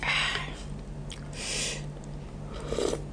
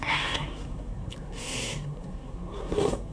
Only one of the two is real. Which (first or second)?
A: first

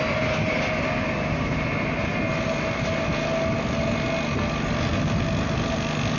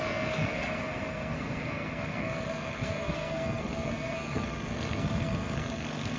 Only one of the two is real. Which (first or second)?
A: first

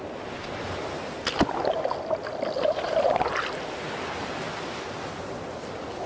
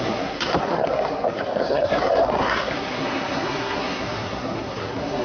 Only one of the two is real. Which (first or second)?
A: first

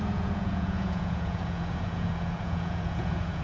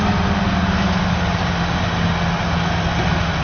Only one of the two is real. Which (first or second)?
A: second